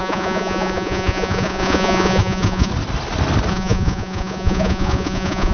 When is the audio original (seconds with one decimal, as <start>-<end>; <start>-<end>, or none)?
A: 2.7-3.5